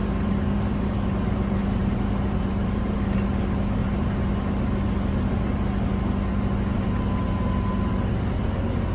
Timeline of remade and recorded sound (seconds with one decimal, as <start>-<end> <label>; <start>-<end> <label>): 0.0-3.0 remade; 3.0-3.8 recorded; 3.8-4.5 remade; 4.5-8.9 recorded